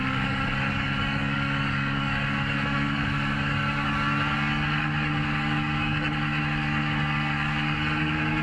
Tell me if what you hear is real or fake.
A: fake